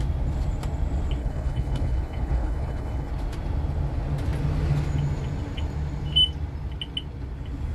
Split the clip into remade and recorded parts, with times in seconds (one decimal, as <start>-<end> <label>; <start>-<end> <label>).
0.0-1.2 recorded; 1.2-3.1 remade; 3.1-7.7 recorded